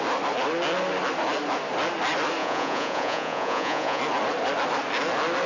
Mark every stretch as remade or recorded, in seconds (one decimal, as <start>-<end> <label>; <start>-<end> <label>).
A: 0.0-2.4 recorded; 2.4-4.0 remade; 4.0-5.5 recorded